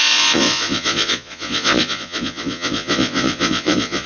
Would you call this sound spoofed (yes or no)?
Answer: yes